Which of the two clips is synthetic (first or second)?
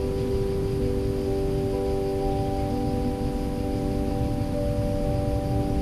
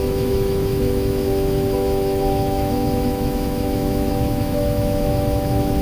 second